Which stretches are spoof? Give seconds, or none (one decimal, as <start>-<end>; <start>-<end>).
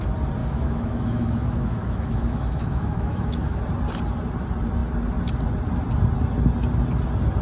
0.4-3.6